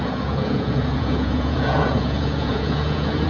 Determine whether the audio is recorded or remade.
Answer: remade